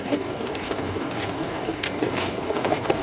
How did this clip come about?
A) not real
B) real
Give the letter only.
A